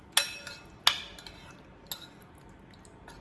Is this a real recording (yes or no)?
yes